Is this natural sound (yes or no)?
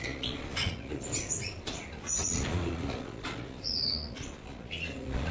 no